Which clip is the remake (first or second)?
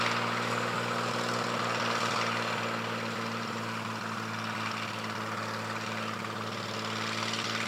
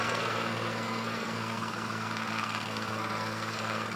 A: second